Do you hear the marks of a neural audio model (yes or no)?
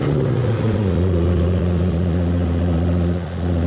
yes